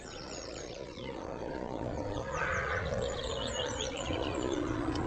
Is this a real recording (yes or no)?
no